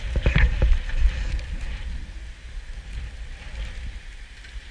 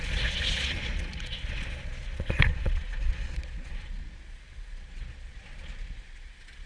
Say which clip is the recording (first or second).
first